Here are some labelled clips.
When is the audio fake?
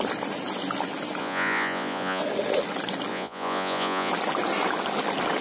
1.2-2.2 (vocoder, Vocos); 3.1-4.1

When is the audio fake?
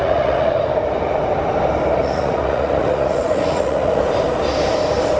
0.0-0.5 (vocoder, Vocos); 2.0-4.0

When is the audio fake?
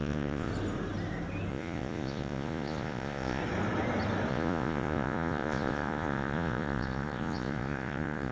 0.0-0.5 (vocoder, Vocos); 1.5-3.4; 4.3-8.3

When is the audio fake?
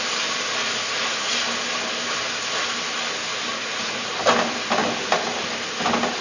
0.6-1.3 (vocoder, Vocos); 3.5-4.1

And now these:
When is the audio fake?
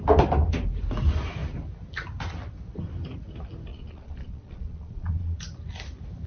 3.7-5.4 (vocoder, Vocos)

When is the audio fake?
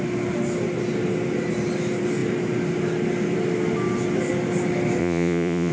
5.0-5.7 (vocoder, Vocos)